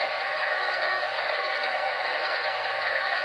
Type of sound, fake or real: fake